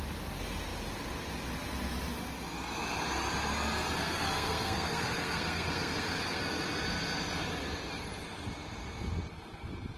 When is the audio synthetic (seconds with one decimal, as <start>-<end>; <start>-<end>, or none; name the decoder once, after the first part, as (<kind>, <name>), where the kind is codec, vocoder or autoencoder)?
4.0-6.4 (codec, SNAC)